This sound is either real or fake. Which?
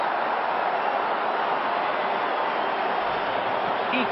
real